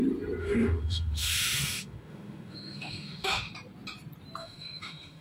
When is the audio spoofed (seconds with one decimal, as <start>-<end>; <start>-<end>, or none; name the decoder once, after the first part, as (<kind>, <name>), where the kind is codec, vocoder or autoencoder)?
0.4-3.5 (autoencoder, DAC-VAE); 4.4-5.2